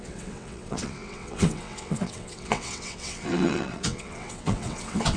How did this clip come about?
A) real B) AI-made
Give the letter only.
B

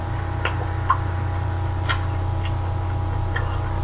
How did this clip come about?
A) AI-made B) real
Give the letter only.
B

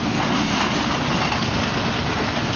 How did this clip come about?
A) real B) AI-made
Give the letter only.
A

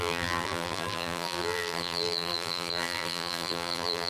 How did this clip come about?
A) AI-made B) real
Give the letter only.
A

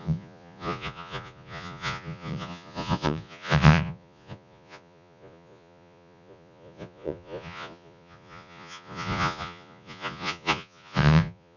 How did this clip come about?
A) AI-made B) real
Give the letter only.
A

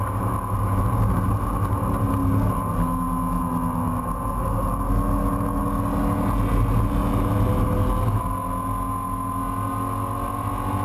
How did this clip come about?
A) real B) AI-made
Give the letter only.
A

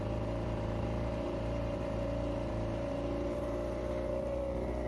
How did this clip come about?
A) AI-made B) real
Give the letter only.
A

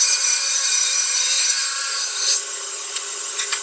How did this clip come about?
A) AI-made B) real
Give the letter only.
A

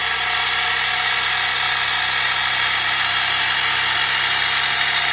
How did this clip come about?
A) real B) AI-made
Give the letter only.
A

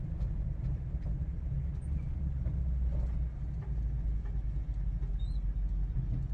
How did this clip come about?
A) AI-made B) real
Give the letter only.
B